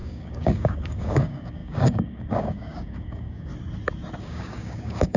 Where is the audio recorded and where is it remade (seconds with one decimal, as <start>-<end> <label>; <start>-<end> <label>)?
0.0-3.5 remade; 3.5-4.2 recorded; 4.2-5.2 remade